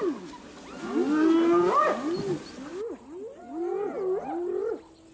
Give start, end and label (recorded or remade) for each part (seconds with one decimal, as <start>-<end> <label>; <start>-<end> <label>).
0.0-5.1 recorded